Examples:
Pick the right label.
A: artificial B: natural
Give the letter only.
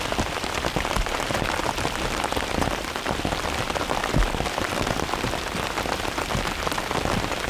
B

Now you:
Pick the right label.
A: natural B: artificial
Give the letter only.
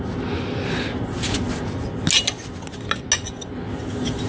A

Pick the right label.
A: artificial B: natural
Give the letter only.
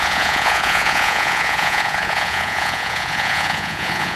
A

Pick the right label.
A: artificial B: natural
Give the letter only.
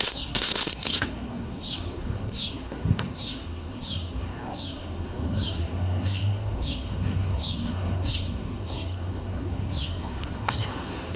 A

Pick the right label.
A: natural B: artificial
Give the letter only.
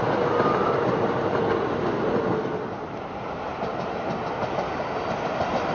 A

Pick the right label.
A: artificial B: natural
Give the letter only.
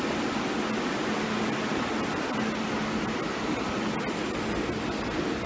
B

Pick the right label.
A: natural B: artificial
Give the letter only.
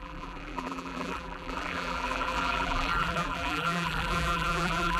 B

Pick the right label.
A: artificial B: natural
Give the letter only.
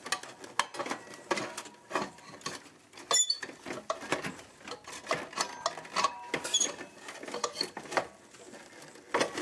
B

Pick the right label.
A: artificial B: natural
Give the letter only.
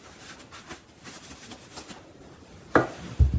B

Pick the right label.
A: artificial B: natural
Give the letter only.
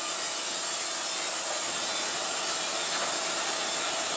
B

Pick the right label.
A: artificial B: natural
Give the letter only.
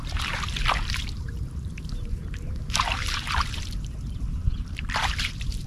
A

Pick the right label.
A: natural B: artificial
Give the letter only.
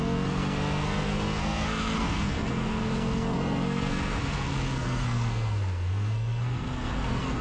B